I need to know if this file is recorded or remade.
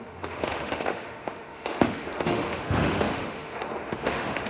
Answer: remade